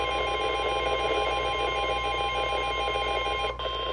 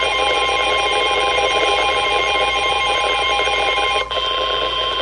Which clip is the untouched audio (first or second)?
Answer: first